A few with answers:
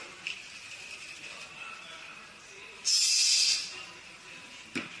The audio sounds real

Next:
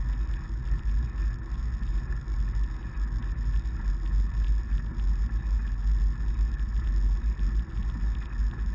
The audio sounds real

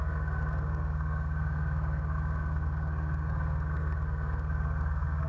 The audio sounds fake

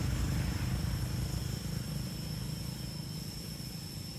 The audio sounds real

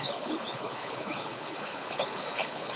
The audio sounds fake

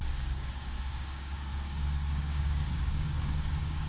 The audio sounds fake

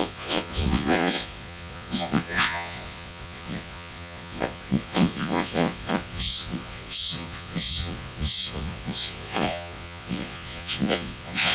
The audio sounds fake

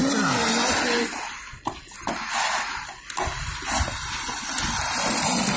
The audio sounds real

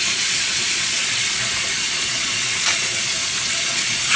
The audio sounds fake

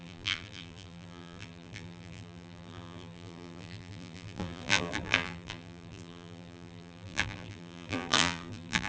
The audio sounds fake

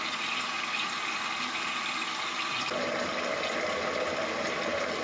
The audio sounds real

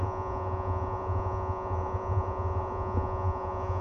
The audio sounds fake